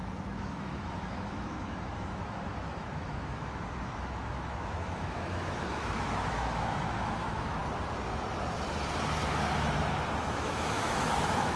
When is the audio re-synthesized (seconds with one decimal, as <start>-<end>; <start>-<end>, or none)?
0.0-7.6; 10.2-11.6